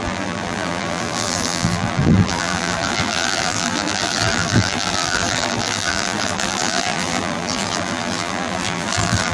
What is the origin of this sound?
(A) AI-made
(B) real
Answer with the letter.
A